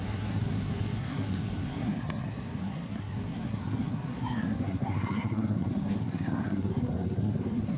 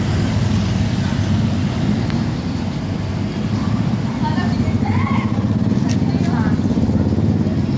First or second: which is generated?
first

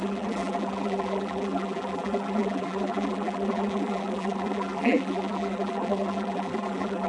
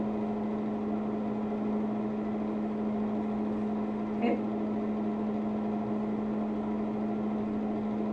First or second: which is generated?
first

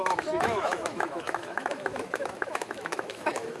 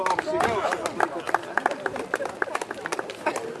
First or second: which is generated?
first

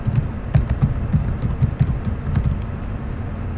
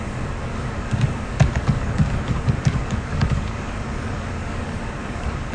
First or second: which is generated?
second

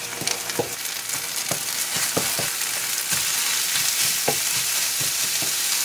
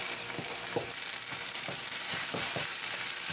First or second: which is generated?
second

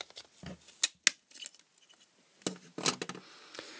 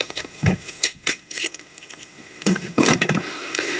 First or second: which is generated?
second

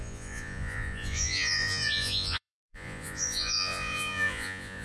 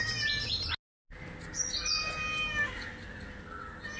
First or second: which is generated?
first